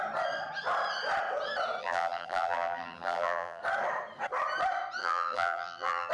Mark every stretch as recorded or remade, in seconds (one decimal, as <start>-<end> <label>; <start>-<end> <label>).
0.0-1.8 recorded; 1.8-3.6 remade; 3.6-5.0 recorded; 5.0-6.1 remade